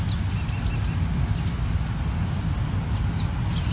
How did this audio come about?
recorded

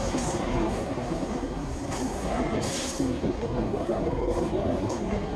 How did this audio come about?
remade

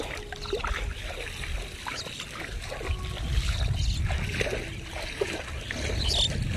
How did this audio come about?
recorded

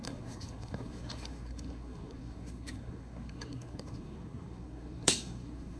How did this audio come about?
remade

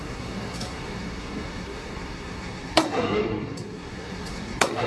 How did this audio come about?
remade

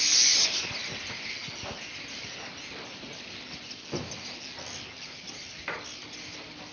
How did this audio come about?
recorded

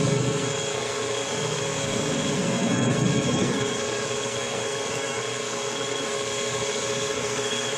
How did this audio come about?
remade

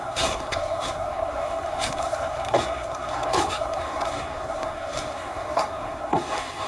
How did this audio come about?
remade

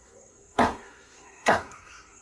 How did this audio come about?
remade